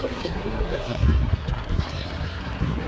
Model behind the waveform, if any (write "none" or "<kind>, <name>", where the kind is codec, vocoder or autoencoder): codec, SNAC